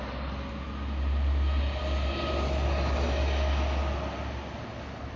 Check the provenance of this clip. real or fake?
real